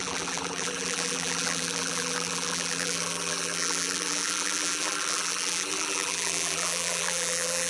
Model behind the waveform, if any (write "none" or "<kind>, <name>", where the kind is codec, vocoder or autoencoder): vocoder, BigVGAN v2